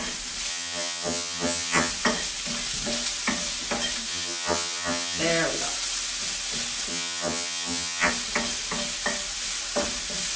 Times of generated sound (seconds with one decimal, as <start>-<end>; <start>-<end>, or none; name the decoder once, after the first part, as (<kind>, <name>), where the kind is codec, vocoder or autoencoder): 0.5-1.9 (vocoder, HiFi-GAN); 4.1-5.2; 6.9-8.1